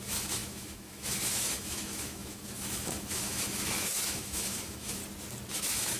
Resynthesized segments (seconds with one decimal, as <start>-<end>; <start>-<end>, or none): 0.0-5.0; 5.5-6.0